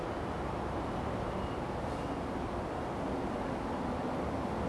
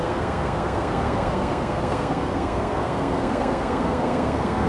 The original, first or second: first